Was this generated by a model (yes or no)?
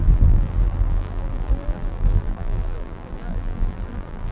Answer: yes